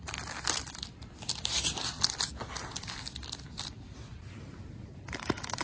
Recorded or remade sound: recorded